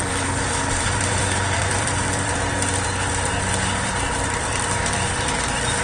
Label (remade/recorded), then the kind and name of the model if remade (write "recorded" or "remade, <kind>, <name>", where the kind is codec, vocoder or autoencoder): remade, vocoder, BigVGAN v2